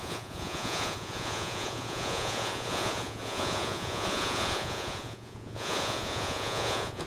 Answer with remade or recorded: remade